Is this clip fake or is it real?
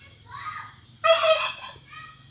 real